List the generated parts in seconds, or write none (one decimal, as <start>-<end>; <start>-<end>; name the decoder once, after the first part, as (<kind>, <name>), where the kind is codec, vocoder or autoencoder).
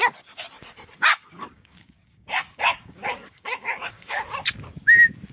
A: 1.1-4.3 (codec, DAC)